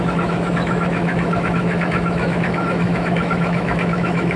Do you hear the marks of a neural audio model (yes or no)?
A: yes